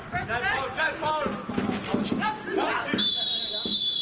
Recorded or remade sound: recorded